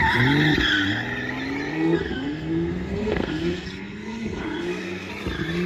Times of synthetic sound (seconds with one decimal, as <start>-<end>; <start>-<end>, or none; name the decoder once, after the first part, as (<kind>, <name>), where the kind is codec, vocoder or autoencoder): 1.7-5.1 (codec, SNAC)